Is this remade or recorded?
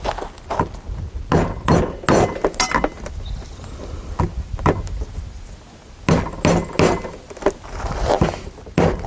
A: recorded